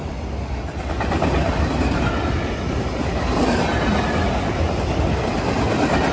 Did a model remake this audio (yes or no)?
no